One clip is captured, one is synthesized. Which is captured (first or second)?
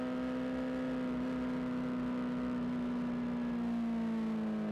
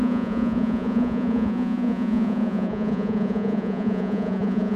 first